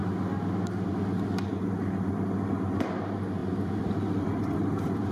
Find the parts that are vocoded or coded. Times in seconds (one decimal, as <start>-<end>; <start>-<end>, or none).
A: 3.4-5.1